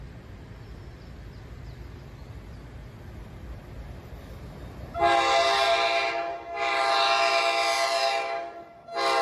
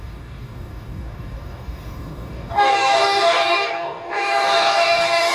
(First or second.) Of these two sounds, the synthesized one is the second